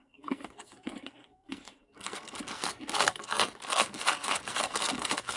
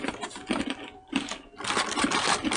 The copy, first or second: first